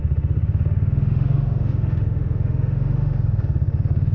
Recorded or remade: remade